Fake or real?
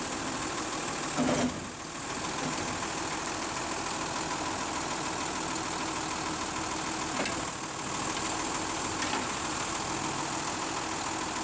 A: real